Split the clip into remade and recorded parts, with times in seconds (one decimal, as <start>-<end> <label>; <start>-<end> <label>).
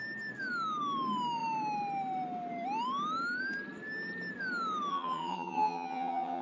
0.0-4.9 recorded; 4.9-6.4 remade